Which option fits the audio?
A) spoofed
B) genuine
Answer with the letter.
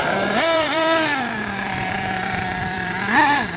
A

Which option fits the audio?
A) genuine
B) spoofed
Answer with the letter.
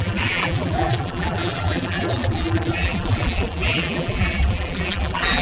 B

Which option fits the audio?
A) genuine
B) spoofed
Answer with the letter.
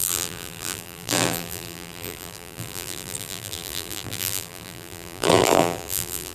B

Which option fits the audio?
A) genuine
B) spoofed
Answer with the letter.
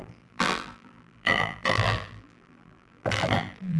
B